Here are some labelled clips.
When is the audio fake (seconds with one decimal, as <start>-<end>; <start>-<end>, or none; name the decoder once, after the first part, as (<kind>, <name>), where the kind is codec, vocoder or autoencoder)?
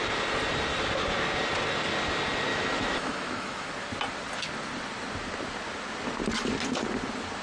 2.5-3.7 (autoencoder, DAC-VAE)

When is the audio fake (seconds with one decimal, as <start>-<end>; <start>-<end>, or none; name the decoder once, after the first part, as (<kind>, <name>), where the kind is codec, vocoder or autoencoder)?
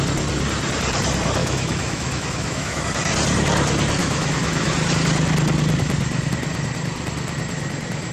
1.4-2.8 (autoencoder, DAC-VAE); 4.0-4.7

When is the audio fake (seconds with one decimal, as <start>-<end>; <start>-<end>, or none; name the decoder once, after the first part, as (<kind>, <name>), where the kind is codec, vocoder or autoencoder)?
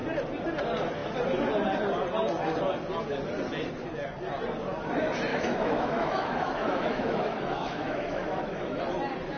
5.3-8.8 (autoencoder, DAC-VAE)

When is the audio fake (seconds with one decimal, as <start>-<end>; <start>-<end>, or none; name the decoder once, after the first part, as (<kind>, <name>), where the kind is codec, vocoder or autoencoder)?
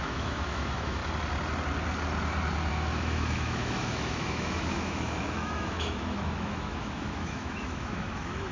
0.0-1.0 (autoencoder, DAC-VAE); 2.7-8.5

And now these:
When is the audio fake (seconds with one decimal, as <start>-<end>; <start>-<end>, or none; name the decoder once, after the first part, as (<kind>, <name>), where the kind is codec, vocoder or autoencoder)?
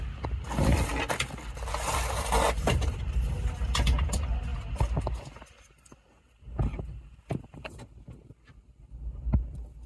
none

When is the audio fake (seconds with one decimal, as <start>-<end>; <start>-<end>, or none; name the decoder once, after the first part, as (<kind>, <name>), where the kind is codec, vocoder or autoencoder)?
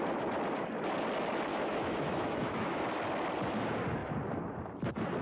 1.5-2.8 (autoencoder, DAC-VAE)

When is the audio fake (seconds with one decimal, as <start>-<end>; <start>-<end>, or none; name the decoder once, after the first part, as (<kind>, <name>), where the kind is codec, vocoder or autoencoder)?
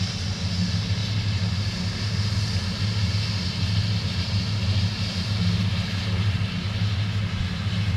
none